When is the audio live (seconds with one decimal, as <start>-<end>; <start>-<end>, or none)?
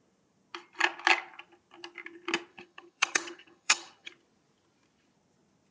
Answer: 0.0-2.5; 4.1-5.7